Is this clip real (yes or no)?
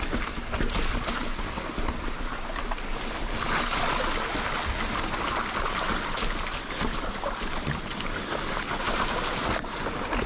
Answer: yes